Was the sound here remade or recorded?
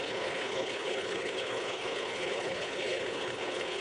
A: remade